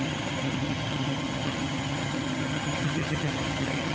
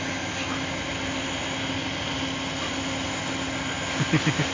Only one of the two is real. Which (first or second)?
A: second